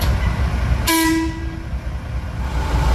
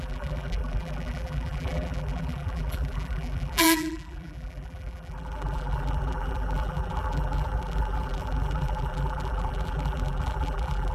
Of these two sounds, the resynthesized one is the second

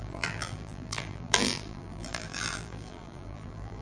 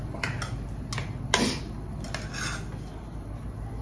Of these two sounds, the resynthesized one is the first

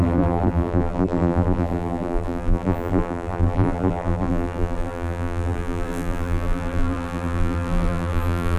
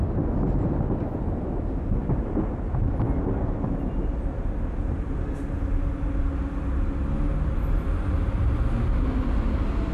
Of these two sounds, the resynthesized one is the first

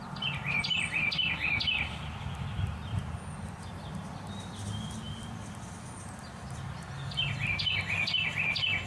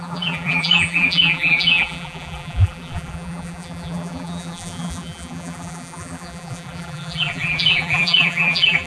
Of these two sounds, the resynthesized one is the second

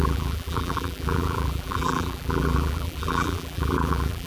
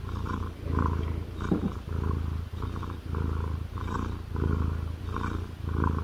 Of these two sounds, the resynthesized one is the first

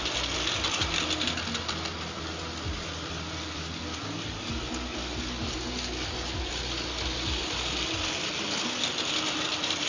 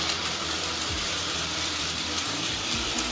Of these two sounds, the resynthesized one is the second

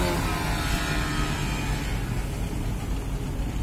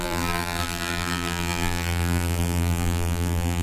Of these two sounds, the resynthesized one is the second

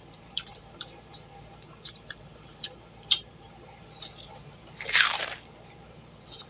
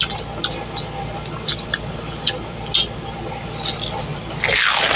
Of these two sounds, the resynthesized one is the first